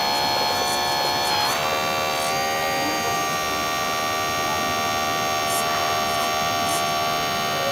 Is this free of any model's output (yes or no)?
yes